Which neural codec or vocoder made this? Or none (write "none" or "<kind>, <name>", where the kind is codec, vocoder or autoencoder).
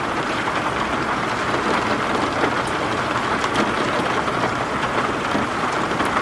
none